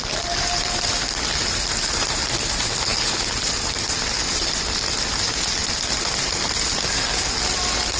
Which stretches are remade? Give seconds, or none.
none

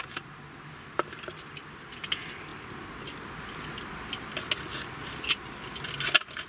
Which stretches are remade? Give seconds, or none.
none

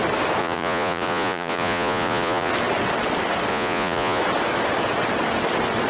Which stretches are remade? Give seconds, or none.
0.4-2.5 (vocoder, Vocos); 3.5-4.2

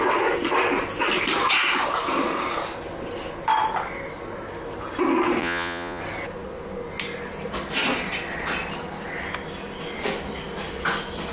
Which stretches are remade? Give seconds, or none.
5.4-6.0 (vocoder, Vocos)